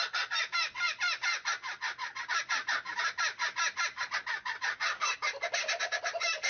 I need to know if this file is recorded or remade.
recorded